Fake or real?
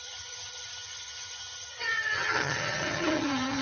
fake